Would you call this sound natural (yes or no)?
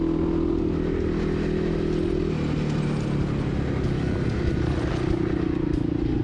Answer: yes